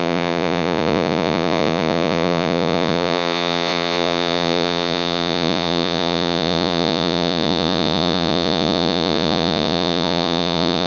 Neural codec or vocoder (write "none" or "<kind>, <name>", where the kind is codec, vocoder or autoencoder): vocoder, Vocos